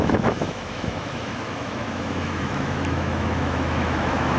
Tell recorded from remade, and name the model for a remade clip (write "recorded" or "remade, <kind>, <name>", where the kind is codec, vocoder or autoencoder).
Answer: remade, autoencoder, DAC-VAE